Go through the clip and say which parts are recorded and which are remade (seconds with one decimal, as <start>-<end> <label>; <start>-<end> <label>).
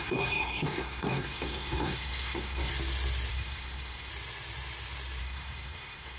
0.0-2.7 remade; 2.7-3.3 recorded; 3.3-4.1 remade; 4.1-5.2 recorded; 5.2-6.2 remade